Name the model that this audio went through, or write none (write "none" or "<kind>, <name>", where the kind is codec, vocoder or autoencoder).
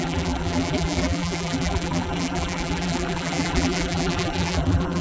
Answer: vocoder, BigVGAN v2